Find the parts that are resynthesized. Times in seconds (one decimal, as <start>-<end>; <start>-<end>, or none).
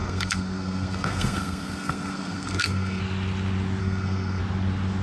0.0-3.0; 3.8-4.4